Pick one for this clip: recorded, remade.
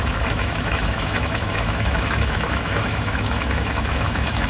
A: remade